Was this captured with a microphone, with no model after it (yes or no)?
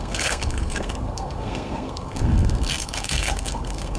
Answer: no